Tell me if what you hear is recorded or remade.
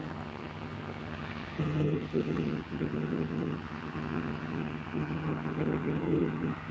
remade